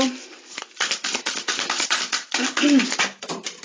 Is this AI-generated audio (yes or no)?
no